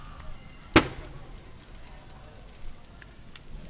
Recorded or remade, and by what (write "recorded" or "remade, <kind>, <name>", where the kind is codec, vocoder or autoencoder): recorded